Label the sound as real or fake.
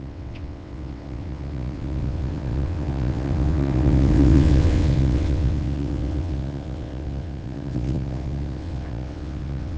fake